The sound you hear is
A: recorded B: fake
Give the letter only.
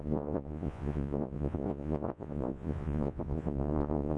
B